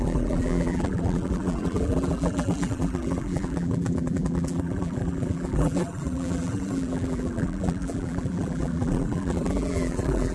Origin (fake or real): fake